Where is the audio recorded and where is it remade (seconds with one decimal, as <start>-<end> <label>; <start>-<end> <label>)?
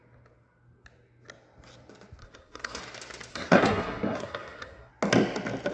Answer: 0.0-2.2 recorded; 2.2-2.8 remade; 2.8-3.3 recorded; 3.3-4.9 remade; 4.9-5.7 recorded